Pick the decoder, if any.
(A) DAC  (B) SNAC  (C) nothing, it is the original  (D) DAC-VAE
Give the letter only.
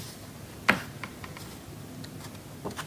C